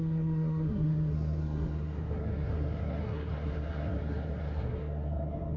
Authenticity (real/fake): fake